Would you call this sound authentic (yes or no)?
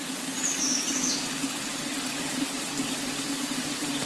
yes